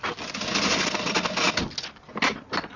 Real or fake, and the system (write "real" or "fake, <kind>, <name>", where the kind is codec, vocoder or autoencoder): real